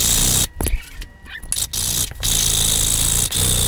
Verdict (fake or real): real